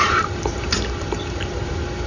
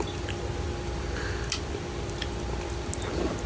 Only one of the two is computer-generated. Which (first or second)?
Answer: first